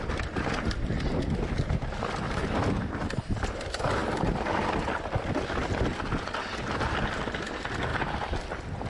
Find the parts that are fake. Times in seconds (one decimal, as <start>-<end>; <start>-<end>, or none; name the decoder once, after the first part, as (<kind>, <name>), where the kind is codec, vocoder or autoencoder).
none